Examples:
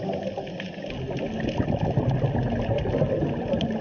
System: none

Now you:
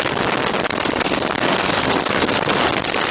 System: none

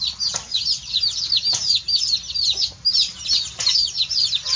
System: none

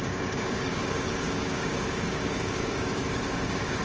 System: codec, DAC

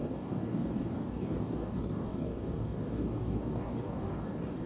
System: codec, DAC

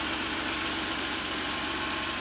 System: none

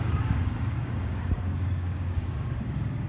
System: codec, DAC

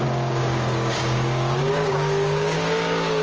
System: codec, DAC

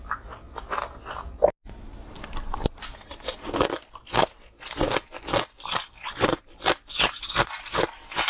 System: none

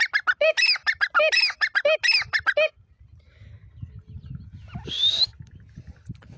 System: none